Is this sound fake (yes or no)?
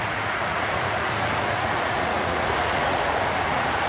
yes